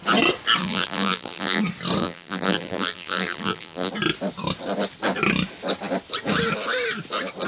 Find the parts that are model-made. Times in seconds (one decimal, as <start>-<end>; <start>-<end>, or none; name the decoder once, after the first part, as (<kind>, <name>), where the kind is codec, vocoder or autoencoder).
0.6-1.6 (vocoder, BigVGAN v2); 2.0-3.9